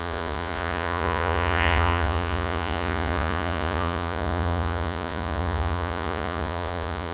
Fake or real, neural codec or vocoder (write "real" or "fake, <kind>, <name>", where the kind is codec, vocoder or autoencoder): fake, vocoder, Vocos